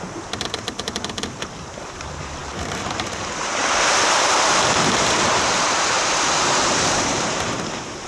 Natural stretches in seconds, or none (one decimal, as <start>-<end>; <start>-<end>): none